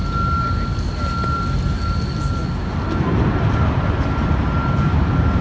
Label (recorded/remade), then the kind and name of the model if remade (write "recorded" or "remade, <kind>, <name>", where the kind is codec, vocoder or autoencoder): recorded